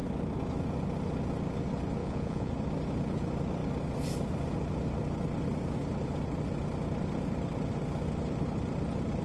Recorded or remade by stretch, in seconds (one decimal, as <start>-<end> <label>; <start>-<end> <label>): 0.0-2.0 recorded; 2.0-2.5 remade; 2.5-9.2 recorded